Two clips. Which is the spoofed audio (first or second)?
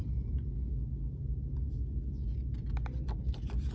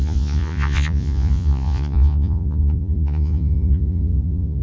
second